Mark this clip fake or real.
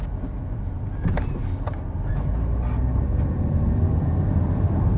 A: real